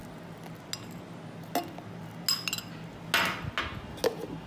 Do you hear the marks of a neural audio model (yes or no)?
no